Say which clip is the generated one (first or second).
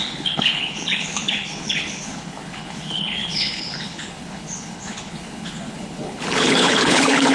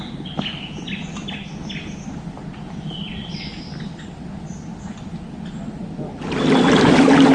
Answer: first